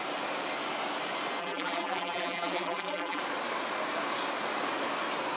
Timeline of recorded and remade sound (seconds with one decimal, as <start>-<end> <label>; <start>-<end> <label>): 0.0-1.4 recorded; 1.4-3.2 remade; 3.2-5.4 recorded